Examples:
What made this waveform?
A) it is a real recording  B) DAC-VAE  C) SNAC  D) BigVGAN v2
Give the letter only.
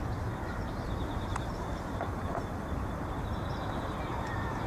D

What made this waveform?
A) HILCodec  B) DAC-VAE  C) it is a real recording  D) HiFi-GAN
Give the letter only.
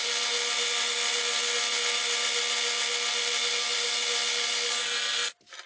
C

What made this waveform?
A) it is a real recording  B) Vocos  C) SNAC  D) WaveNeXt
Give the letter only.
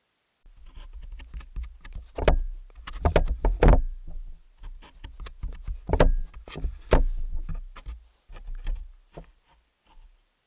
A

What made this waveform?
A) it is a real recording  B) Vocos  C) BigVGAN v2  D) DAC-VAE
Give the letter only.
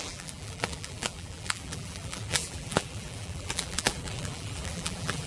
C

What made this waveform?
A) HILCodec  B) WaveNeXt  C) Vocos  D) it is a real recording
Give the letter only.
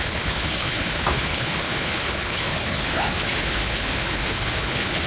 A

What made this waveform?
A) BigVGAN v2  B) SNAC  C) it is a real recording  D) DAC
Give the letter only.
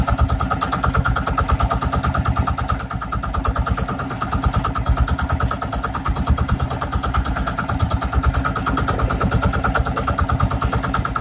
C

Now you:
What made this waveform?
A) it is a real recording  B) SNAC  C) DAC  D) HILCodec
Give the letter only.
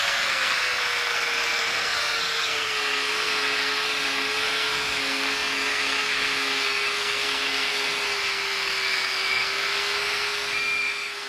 B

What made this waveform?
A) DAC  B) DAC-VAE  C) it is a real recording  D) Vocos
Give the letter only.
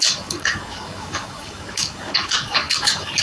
A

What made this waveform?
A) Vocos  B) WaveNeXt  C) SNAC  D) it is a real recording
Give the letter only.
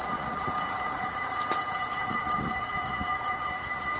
A